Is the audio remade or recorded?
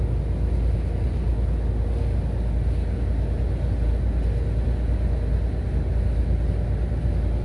recorded